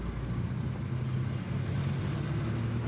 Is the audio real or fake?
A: real